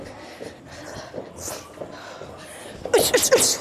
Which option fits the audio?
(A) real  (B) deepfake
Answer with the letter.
A